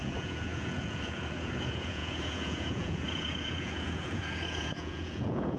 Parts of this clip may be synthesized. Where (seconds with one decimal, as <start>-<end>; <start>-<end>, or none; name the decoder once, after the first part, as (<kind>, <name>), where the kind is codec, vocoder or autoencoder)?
0.0-5.6 (vocoder, Vocos)